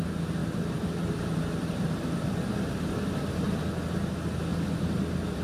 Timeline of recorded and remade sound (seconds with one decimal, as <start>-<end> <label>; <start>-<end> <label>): 0.0-0.4 recorded; 0.4-3.6 remade; 3.6-4.5 recorded; 4.5-5.4 remade